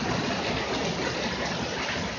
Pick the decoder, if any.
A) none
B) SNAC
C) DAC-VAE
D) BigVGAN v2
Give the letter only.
D